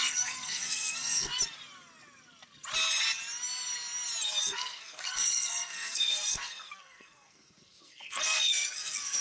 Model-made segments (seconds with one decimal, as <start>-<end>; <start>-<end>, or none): 0.0-1.3; 4.4-9.2